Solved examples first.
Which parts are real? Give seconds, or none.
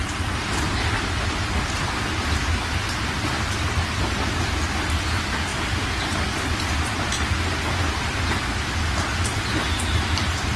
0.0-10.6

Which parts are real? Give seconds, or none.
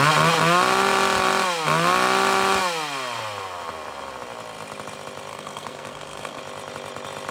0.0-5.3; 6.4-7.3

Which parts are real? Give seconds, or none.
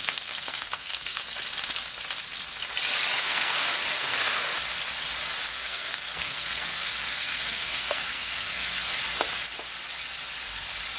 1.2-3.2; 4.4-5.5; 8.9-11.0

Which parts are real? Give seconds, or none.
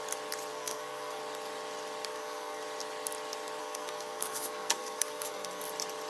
0.0-0.5; 1.2-2.1; 2.6-3.6; 5.6-6.1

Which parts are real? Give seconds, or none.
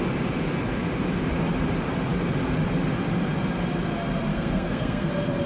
0.0-4.3; 5.1-5.5